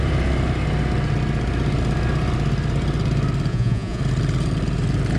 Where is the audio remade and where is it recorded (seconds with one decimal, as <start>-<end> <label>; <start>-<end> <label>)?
0.0-3.5 recorded; 3.5-4.0 remade; 4.0-5.2 recorded